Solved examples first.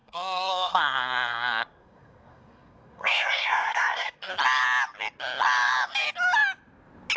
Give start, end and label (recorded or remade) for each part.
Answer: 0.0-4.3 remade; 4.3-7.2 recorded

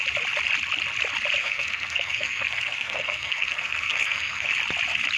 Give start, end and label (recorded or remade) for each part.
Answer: 0.0-1.4 recorded; 1.4-4.5 remade; 4.5-5.2 recorded

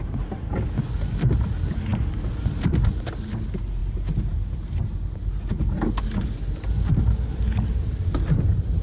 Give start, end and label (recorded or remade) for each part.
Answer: 0.0-8.8 recorded

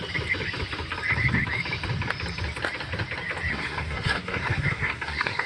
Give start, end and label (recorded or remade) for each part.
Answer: 0.0-3.5 recorded; 3.5-5.5 remade

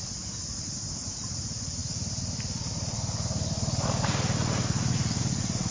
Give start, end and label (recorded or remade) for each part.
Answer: 0.0-5.7 recorded

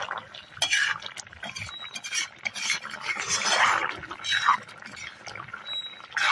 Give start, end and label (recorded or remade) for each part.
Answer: 0.0-6.3 recorded